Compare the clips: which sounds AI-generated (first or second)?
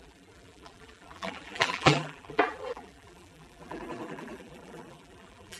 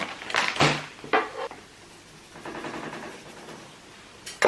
first